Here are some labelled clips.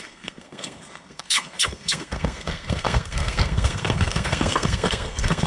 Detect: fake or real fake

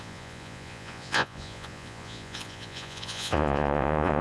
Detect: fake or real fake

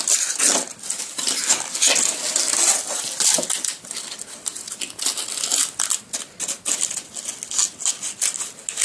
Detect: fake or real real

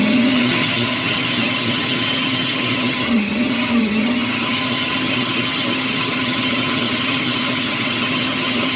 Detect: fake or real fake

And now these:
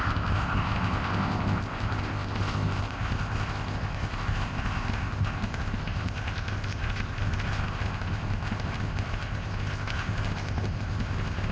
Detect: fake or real fake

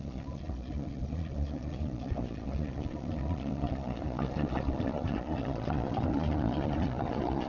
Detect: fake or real fake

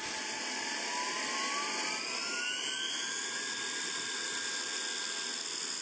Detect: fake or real real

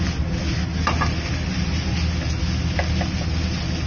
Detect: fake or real real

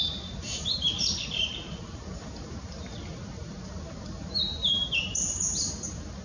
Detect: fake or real fake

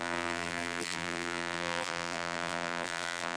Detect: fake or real fake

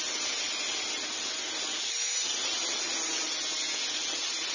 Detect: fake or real real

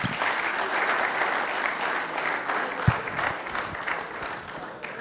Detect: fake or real real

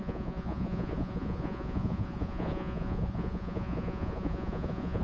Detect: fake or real fake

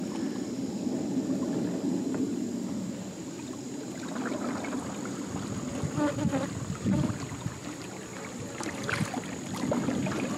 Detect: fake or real real